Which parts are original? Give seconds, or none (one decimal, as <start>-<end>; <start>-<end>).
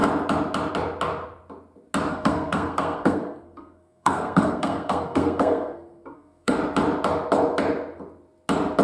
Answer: 0.0-2.1; 6.6-8.8